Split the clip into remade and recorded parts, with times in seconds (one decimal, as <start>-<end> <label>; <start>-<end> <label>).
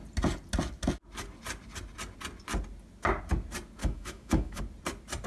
0.0-3.8 recorded; 3.8-4.6 remade; 4.6-5.3 recorded